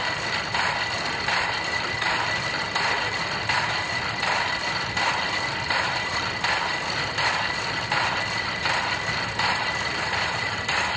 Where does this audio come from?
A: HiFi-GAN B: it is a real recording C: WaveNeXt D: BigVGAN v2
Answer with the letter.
B